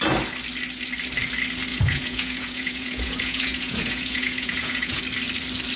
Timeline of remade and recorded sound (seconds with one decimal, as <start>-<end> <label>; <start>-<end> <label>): 0.0-1.7 recorded; 1.7-5.0 remade; 5.0-5.8 recorded